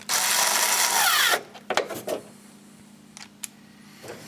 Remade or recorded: recorded